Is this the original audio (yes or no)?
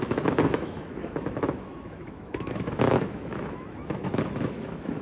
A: no